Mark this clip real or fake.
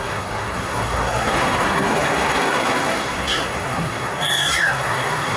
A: fake